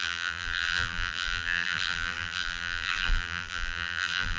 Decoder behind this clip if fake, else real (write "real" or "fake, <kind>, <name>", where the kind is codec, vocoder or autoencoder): fake, vocoder, BigVGAN v2